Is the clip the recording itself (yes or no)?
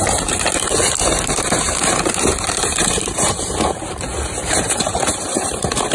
no